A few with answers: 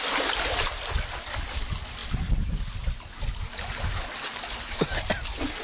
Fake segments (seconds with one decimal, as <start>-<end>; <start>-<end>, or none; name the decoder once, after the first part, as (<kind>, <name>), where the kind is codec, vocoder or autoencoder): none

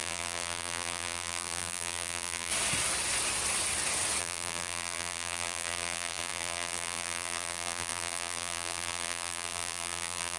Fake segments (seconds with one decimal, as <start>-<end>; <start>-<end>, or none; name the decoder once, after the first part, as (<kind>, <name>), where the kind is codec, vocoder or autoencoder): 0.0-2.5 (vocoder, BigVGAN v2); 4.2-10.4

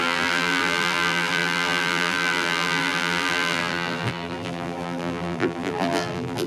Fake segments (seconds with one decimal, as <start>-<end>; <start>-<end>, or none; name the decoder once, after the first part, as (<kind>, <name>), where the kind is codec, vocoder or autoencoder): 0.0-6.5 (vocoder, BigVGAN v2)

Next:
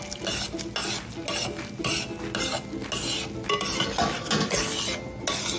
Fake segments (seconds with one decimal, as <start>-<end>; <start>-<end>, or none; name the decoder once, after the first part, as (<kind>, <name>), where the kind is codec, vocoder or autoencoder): none

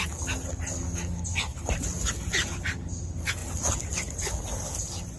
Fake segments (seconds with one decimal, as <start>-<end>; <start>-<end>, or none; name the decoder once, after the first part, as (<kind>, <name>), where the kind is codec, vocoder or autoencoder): none

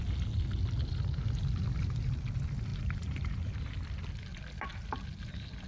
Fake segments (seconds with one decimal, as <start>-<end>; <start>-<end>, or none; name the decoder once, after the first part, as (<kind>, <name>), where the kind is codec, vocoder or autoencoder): 2.7-3.6 (vocoder, BigVGAN v2)

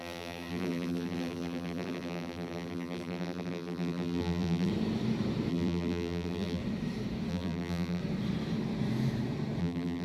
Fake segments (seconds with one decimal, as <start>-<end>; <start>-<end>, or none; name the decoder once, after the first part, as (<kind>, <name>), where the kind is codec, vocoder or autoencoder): 0.0-4.7 (vocoder, BigVGAN v2); 5.5-6.6; 7.3-8.0; 9.6-10.0